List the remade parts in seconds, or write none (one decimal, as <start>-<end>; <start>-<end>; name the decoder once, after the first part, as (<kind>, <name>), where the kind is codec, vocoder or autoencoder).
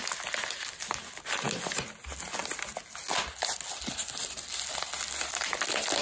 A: none